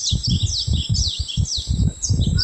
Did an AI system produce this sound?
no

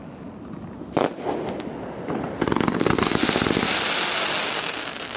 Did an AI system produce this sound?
no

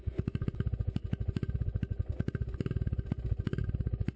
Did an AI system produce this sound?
no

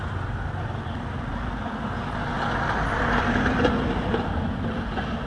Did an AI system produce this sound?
no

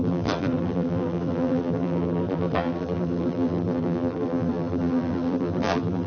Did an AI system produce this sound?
yes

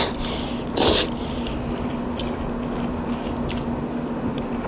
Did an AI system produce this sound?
no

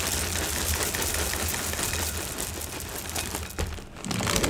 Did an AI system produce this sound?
no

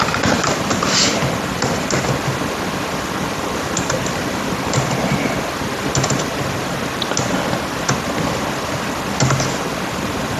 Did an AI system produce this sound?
yes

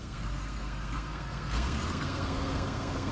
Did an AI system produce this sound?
yes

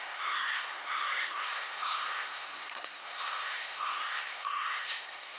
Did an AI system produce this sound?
yes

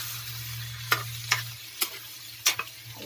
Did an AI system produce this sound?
no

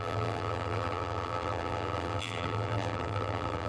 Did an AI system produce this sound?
yes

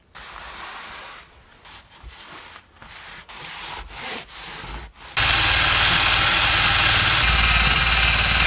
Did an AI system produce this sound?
no